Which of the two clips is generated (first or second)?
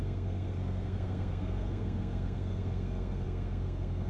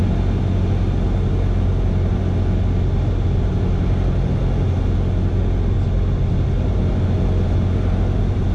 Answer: first